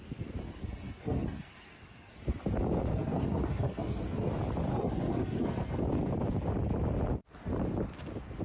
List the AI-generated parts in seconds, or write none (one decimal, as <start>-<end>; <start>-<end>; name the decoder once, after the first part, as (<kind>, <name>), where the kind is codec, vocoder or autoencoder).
0.4-2.2 (codec, SNAC); 2.9-4.3; 4.7-5.8